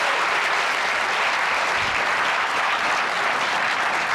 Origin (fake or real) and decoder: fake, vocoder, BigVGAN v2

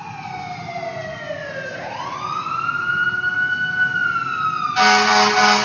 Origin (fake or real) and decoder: real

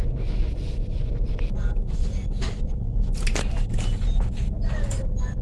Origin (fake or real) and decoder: fake, vocoder, BigVGAN v2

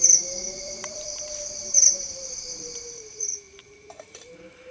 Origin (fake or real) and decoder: fake, vocoder, BigVGAN v2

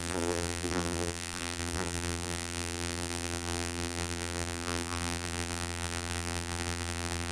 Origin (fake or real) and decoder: fake, vocoder, BigVGAN v2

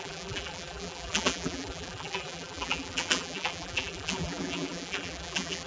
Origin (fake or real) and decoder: fake, vocoder, BigVGAN v2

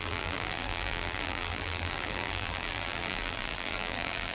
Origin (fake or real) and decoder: fake, vocoder, BigVGAN v2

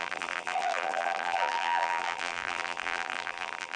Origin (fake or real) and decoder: fake, vocoder, BigVGAN v2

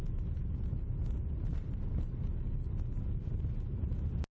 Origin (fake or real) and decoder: real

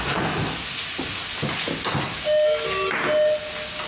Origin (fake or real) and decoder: real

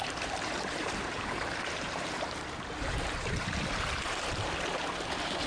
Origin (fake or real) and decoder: fake, vocoder, BigVGAN v2